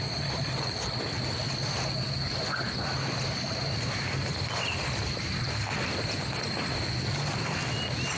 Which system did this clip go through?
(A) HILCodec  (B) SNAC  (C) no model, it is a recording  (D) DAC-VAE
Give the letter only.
C